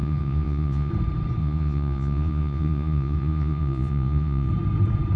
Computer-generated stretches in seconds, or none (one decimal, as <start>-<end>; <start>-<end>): 0.0-0.9; 1.4-4.5